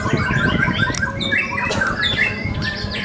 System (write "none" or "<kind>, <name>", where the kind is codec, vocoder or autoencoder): none